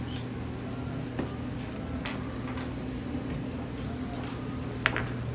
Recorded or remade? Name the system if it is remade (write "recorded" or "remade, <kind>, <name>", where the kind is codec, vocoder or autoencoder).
recorded